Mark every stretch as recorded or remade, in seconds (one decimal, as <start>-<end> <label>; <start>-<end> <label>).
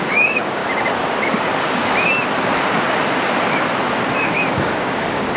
0.0-0.6 remade; 0.6-1.3 recorded; 1.3-1.8 remade; 1.8-4.1 recorded; 4.1-5.4 remade